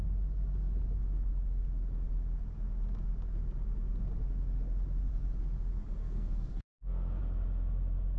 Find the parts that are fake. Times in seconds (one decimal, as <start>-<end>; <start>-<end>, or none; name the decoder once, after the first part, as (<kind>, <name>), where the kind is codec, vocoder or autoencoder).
6.0-7.2 (codec, SNAC)